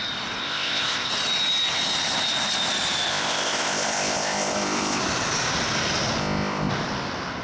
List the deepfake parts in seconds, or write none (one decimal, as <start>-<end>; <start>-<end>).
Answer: 0.4-1.1; 3.1-5.0; 6.2-6.7